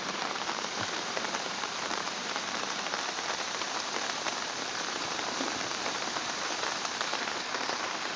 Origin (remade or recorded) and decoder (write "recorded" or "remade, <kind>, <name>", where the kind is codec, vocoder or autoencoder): remade, vocoder, BigVGAN v2